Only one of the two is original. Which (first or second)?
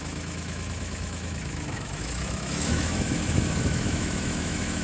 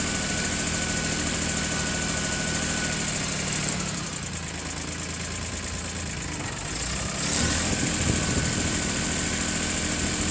second